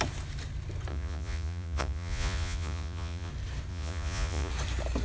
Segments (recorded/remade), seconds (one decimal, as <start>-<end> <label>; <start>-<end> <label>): 0.0-0.9 recorded; 0.9-3.3 remade; 3.3-3.7 recorded; 3.7-4.5 remade; 4.5-5.0 recorded